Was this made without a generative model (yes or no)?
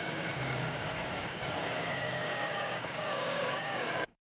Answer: no